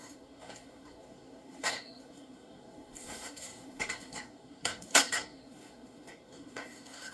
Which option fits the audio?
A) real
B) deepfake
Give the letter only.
B